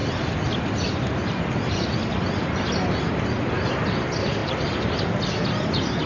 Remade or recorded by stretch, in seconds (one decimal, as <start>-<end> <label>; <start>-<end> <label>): 0.0-6.1 recorded